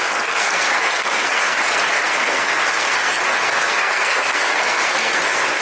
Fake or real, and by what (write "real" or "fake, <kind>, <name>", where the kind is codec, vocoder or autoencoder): fake, codec, SNAC